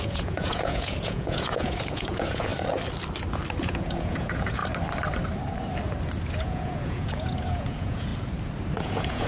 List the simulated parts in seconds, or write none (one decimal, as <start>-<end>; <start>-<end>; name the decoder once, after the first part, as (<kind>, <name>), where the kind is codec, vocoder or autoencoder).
0.0-2.5 (vocoder, Vocos); 3.6-4.6; 6.3-8.1; 8.8-9.3